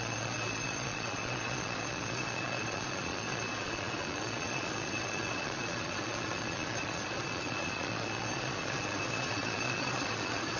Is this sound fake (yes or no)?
yes